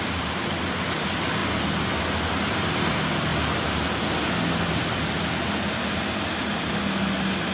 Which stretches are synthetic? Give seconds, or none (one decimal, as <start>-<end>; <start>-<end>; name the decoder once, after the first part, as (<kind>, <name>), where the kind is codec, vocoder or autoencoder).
1.4-2.0 (vocoder, BigVGAN v2); 3.3-5.4